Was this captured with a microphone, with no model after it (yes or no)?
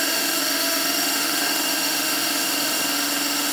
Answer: no